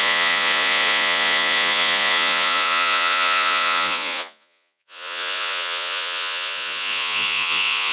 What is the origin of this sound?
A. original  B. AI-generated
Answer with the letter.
B